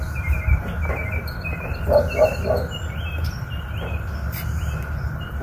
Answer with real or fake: real